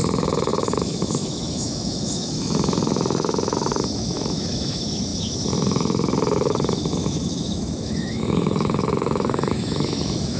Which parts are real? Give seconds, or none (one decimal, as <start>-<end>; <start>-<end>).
none